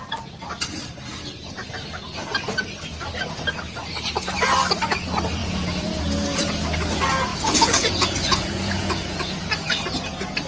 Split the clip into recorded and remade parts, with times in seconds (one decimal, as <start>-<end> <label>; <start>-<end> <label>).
0.0-5.4 recorded; 5.4-6.0 remade; 6.0-7.3 recorded; 7.3-9.4 remade; 9.4-10.5 recorded